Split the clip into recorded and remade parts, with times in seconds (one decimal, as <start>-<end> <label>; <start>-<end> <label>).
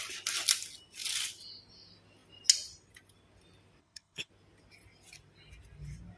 0.0-3.8 recorded; 3.8-4.3 remade; 4.3-6.2 recorded